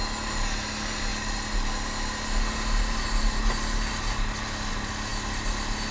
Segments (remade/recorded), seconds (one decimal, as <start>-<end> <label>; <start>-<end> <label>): 0.0-5.9 recorded